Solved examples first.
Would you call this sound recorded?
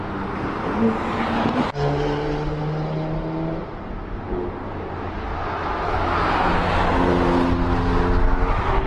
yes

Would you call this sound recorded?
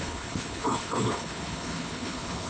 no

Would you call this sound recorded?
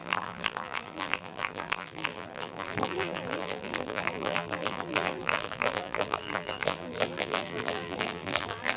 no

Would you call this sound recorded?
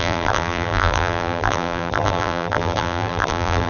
no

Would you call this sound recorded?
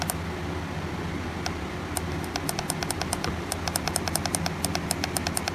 yes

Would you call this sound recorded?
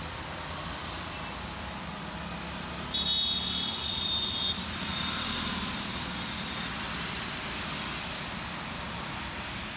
yes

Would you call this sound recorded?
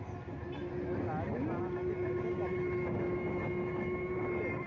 yes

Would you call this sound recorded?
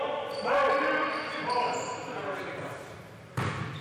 no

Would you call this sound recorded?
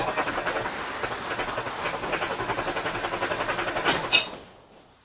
yes